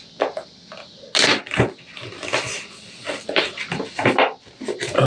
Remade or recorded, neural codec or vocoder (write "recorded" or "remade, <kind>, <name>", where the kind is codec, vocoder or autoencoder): recorded